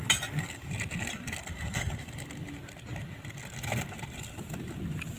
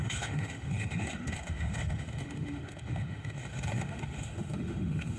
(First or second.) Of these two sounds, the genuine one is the first